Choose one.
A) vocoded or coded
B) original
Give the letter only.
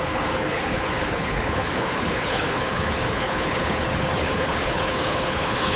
A